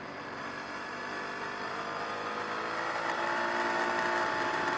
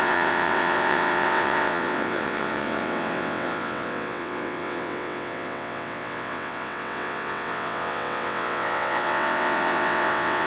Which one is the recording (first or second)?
first